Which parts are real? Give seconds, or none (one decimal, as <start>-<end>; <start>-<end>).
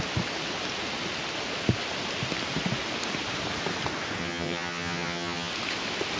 0.0-4.2; 5.5-6.2